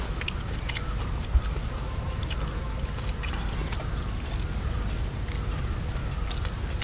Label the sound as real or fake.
real